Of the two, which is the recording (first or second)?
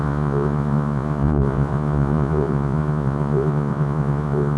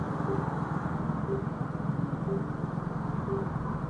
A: second